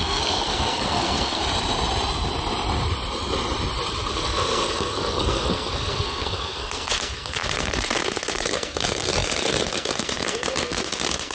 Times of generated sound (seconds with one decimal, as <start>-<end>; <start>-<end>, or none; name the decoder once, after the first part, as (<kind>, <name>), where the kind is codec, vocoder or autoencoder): 0.0-1.4 (codec, SNAC); 4.1-11.3